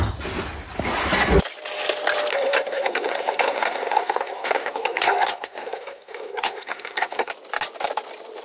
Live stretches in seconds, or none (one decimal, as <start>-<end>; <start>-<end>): 0.0-2.3; 7.3-8.4